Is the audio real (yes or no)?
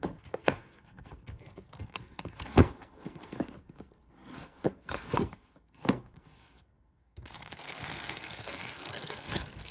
no